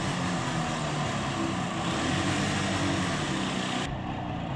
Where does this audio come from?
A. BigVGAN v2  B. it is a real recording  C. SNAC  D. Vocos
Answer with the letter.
B